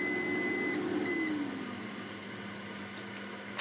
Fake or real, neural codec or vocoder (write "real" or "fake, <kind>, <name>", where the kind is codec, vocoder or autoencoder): real